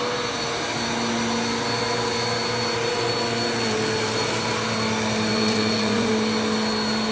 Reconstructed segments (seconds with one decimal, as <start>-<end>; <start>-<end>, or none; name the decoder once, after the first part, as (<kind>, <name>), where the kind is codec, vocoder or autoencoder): 5.3-6.1 (vocoder, Vocos)